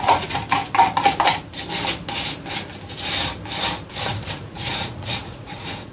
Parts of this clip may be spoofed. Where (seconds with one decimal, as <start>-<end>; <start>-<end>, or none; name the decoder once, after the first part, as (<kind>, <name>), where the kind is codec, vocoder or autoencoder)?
0.0-0.4 (vocoder, Vocos); 3.9-5.9